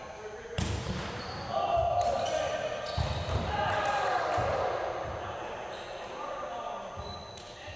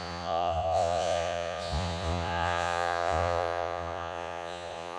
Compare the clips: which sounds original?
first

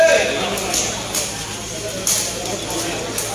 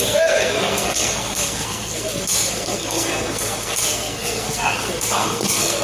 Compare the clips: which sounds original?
first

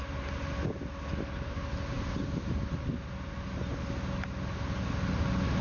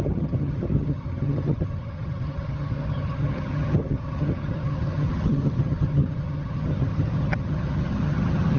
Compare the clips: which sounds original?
first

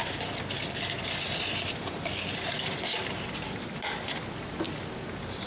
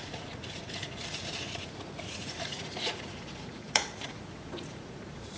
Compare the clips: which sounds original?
first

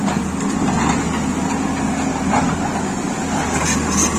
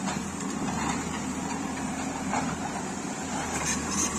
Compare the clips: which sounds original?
first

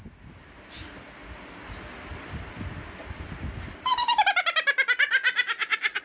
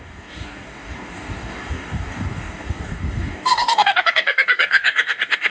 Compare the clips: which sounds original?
first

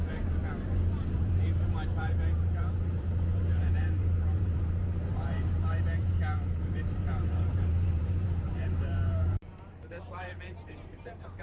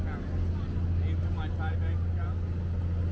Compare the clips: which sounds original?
second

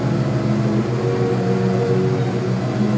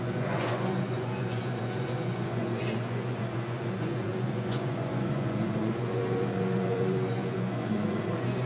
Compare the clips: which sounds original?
first